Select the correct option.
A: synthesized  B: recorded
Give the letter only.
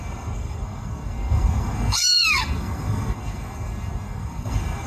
A